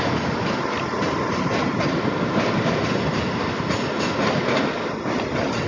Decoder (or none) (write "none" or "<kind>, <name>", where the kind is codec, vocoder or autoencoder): none